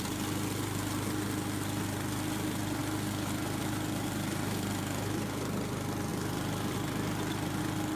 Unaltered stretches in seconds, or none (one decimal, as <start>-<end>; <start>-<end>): 0.0-8.0